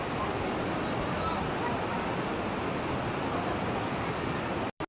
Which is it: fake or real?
real